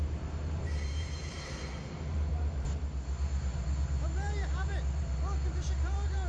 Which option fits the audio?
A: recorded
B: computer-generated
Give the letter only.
B